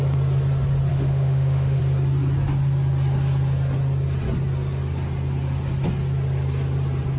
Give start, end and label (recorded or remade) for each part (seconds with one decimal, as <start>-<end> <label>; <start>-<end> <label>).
0.0-0.9 recorded; 0.9-1.8 remade; 1.8-7.2 recorded